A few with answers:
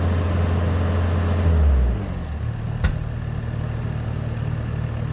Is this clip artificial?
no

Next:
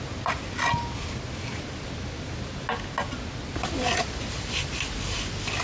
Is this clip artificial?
no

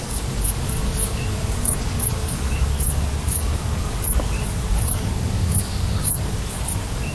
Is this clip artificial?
yes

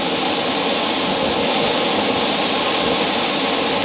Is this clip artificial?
no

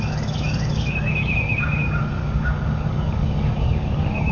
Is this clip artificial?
yes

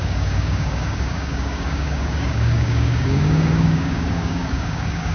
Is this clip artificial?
yes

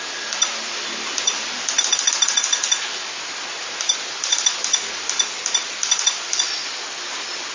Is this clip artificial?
no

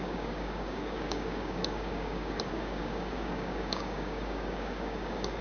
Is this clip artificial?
yes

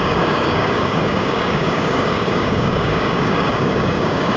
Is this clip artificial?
yes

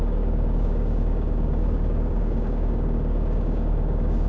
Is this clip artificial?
yes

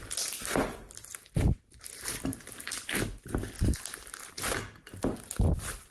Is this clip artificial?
no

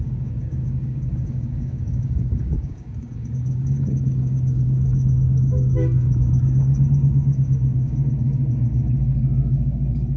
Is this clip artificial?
yes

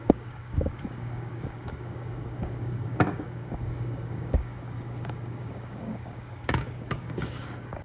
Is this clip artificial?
yes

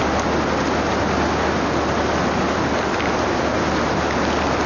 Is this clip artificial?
no